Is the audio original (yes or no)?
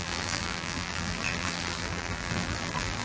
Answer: no